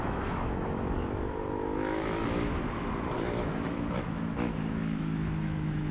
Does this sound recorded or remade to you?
remade